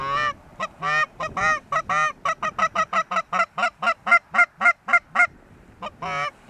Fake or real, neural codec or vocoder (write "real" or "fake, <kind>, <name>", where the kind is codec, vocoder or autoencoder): real